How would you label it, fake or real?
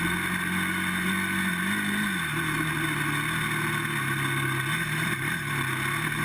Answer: real